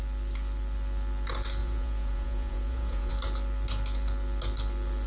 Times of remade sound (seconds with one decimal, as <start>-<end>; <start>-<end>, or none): 1.6-3.1